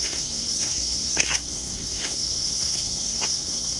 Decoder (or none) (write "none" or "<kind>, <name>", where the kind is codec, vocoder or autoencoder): codec, SNAC